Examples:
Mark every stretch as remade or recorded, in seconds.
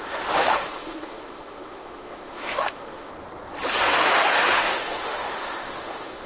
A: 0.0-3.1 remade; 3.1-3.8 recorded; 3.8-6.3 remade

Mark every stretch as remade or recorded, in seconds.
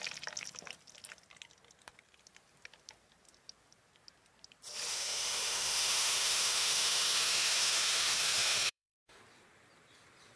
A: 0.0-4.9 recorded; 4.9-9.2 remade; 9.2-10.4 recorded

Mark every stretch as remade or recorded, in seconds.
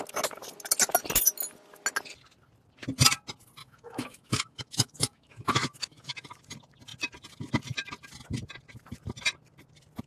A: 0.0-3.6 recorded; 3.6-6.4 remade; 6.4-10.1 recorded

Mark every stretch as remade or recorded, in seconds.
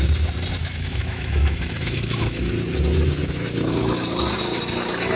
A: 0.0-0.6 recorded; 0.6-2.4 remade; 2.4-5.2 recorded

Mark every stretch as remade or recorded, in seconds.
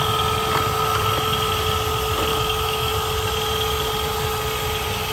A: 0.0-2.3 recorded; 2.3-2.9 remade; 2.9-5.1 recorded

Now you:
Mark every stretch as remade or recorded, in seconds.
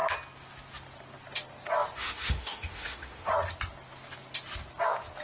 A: 0.0-2.0 recorded; 2.0-3.3 remade; 3.3-5.2 recorded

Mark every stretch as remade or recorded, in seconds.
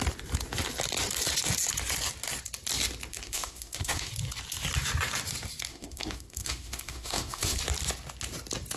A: 0.0-3.1 recorded; 3.1-4.1 remade; 4.1-5.7 recorded; 5.7-7.6 remade; 7.6-8.8 recorded